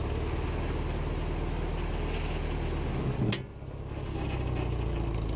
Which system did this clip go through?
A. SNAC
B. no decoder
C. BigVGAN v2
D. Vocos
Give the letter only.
B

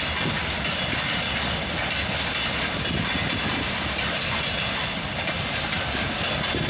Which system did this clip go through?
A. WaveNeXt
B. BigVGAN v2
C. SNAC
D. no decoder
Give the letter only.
D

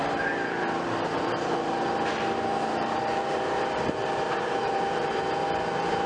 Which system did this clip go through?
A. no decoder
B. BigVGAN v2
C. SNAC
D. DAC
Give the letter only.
B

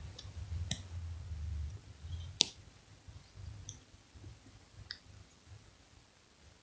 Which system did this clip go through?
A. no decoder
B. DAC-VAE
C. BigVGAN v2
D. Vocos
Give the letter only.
A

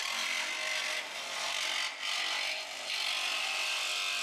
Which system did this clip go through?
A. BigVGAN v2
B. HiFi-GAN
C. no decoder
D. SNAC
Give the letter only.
C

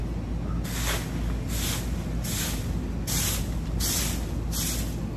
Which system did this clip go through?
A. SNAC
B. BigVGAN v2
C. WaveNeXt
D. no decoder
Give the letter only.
D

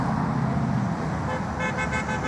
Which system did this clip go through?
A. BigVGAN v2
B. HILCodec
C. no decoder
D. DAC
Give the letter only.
C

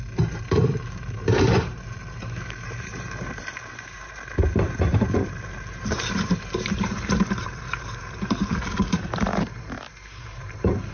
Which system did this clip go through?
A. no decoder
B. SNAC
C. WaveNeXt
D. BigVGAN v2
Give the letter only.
D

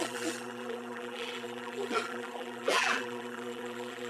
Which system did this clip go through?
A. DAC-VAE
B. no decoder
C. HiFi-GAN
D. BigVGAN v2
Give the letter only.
D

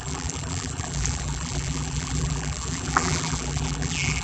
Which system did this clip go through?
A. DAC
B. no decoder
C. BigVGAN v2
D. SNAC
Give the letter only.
C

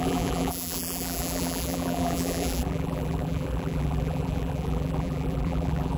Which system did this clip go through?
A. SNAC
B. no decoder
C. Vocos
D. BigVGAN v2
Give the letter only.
D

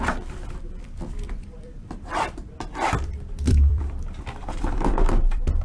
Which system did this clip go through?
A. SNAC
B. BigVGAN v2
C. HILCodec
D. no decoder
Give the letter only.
B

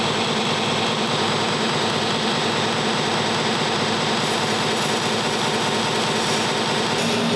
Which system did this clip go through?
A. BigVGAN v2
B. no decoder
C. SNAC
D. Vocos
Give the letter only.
B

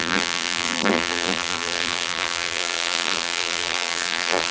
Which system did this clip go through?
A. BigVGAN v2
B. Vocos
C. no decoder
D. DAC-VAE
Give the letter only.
A